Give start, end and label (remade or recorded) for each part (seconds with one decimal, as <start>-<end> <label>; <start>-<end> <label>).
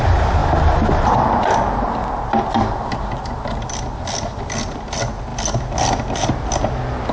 0.0-7.1 recorded